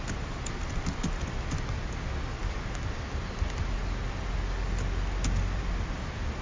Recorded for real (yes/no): yes